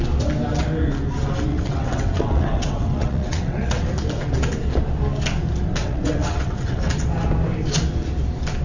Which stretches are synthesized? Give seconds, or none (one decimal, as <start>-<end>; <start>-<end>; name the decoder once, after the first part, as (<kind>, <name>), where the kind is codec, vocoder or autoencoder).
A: 1.5-3.9 (vocoder, WaveNeXt); 5.8-6.9